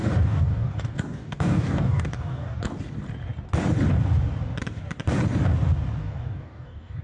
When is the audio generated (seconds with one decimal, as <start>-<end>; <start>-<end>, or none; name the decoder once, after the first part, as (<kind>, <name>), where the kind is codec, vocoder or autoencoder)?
0.0-2.6 (codec, DAC); 6.0-7.0